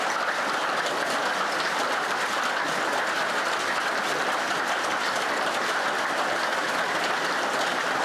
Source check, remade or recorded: recorded